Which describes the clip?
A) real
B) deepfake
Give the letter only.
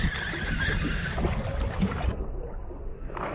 A